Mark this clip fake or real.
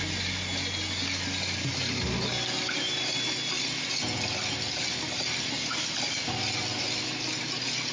real